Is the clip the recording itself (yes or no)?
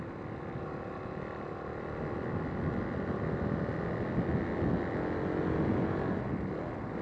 yes